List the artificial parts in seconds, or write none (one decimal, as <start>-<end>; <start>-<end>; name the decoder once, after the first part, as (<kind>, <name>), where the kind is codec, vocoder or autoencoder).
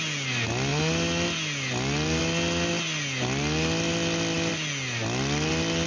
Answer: none